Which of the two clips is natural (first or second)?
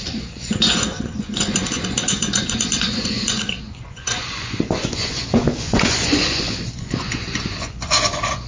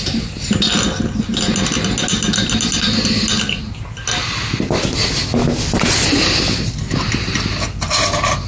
second